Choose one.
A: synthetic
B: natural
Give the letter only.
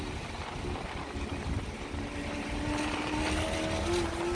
B